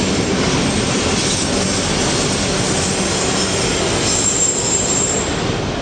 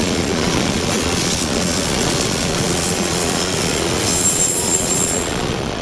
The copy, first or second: second